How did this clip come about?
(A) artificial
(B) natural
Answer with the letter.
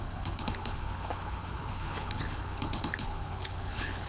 A